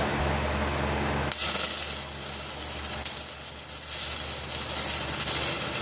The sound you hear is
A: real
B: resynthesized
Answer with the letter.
A